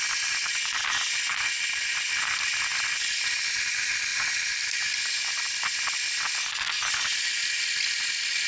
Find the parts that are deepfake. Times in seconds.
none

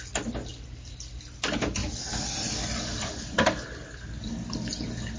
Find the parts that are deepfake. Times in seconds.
none

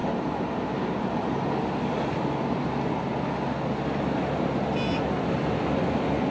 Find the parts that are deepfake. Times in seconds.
none

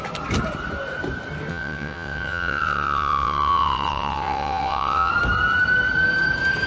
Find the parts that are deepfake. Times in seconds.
1.5-5.1 (vocoder, WaveNeXt)

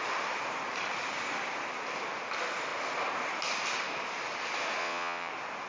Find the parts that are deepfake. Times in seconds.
4.8-5.3 (vocoder, WaveNeXt)

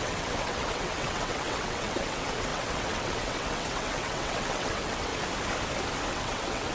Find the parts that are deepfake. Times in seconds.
0.0-5.1 (vocoder, WaveNeXt); 6.1-6.7